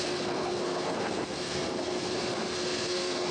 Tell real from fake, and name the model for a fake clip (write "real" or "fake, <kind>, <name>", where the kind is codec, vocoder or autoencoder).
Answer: fake, codec, SNAC